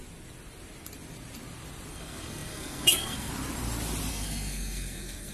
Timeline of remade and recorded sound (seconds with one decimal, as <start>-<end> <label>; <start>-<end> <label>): 0.0-1.9 recorded; 1.9-3.3 remade; 3.3-4.1 recorded; 4.1-5.3 remade